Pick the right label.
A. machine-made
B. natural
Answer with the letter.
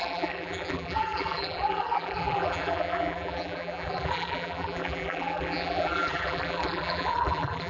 A